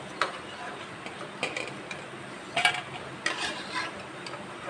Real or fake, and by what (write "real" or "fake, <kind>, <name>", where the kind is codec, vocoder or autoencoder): real